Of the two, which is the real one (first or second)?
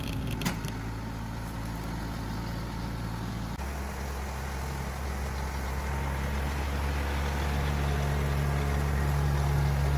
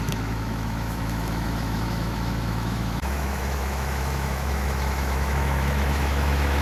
first